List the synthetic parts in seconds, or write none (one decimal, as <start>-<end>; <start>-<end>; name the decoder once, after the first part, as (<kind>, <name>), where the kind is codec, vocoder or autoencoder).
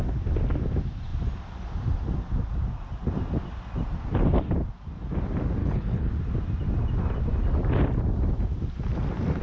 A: 5.6-6.1 (codec, HILCodec)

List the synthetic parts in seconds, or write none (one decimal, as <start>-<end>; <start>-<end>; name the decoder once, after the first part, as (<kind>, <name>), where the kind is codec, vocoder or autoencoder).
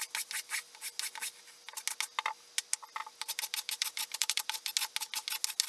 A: 3.0-4.7 (vocoder, BigVGAN v2)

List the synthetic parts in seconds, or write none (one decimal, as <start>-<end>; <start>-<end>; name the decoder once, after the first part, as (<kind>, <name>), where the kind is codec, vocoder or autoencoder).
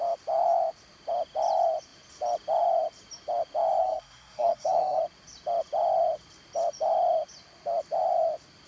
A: 3.8-5.0 (codec, SNAC)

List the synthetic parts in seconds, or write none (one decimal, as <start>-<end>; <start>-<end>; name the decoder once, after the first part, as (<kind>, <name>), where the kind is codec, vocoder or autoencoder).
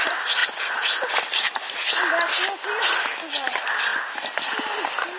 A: none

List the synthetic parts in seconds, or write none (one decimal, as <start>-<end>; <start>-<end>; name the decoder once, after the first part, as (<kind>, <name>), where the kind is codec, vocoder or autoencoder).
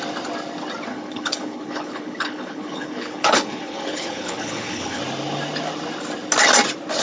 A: 0.9-5.0 (codec, HILCodec)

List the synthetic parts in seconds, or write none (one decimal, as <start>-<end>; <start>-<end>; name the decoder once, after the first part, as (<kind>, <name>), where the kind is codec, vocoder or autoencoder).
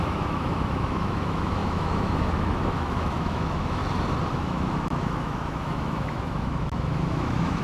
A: 0.0-3.8 (autoencoder, DAC-VAE); 4.3-7.6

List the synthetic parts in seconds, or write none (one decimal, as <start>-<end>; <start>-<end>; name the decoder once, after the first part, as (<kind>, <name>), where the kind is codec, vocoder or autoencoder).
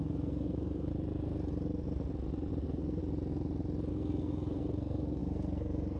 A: 0.0-0.9 (codec, SNAC); 2.6-3.0; 3.9-6.0